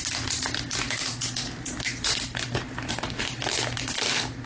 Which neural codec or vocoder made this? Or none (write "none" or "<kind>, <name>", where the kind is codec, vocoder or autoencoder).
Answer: none